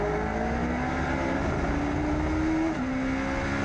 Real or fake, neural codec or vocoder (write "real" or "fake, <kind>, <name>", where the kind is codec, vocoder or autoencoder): real